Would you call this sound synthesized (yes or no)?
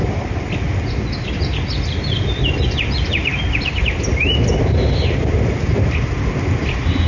no